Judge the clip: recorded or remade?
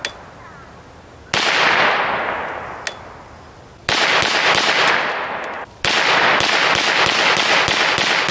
recorded